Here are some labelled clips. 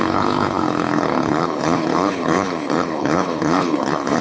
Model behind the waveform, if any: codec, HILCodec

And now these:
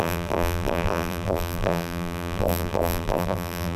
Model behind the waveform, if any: vocoder, BigVGAN v2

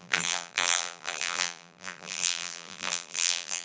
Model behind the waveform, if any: vocoder, BigVGAN v2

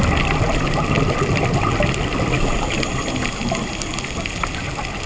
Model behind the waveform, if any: none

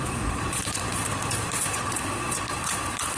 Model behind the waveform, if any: vocoder, Vocos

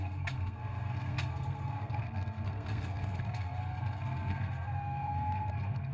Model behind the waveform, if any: codec, SNAC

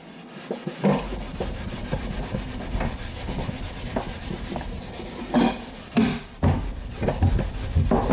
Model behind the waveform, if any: none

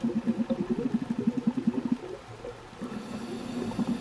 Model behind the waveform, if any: none